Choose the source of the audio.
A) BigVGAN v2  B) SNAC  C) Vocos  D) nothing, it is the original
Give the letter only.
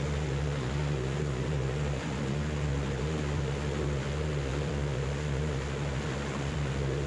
C